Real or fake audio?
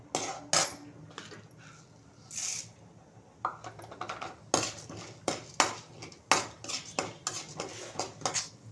real